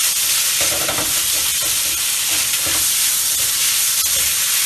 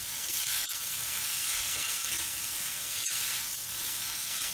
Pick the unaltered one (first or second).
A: first